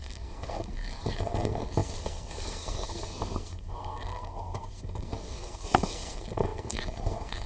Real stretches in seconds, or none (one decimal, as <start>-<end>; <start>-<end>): none